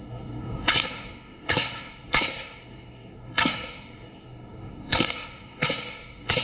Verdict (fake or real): fake